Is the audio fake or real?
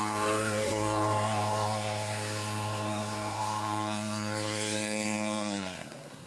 fake